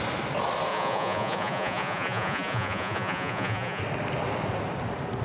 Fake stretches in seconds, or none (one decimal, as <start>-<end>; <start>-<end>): 0.7-3.8

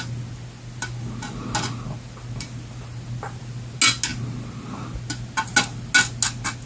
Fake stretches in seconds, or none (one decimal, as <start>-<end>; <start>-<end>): none

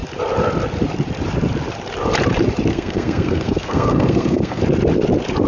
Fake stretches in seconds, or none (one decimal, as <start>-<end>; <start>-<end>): 2.7-4.6

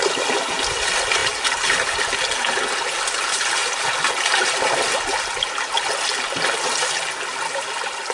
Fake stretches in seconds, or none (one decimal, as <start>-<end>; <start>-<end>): none

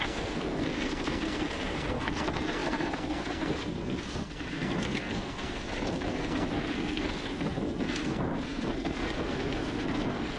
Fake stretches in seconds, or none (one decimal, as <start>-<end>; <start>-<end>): 0.0-10.4

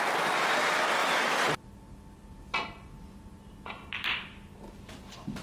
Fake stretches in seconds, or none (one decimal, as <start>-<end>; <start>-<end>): none

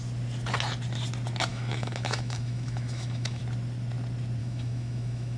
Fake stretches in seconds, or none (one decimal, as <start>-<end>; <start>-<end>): 1.5-3.4; 4.4-5.4

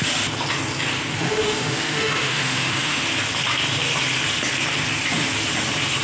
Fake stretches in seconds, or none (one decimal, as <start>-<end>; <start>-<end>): 1.1-3.0